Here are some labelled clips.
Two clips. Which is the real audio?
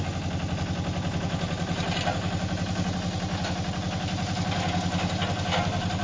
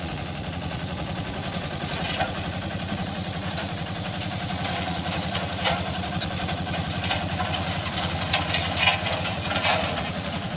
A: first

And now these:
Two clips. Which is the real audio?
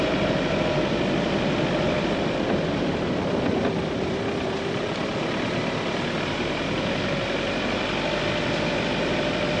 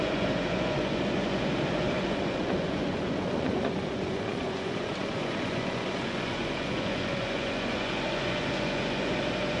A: first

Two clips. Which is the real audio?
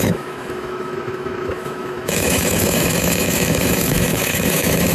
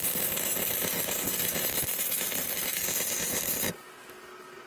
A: second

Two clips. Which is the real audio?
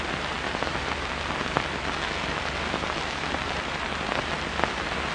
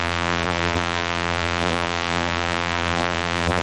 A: first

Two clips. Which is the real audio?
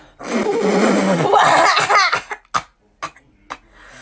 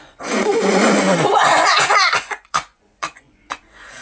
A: first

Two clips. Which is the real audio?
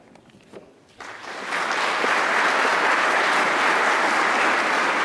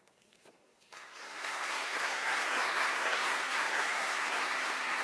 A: first